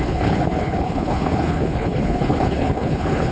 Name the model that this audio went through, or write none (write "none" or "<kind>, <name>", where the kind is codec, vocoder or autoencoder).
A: codec, HILCodec